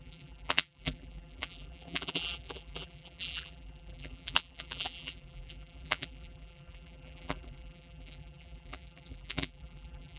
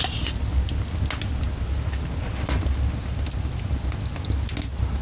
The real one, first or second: second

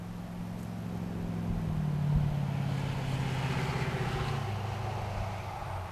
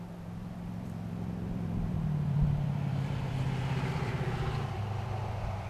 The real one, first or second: first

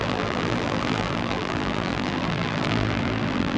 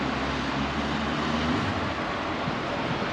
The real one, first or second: second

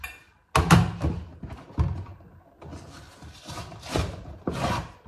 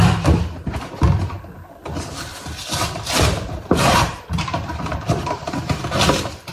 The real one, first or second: first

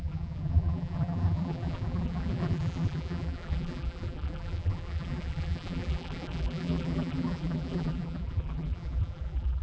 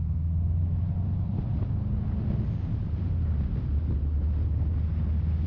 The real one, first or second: second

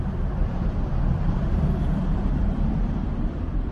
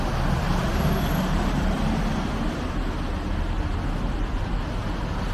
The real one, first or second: second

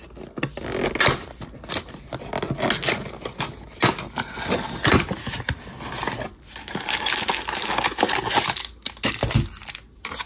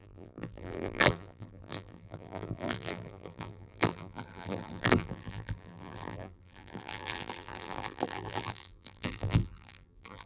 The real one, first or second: first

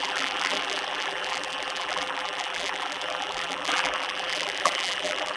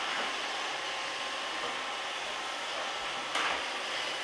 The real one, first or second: second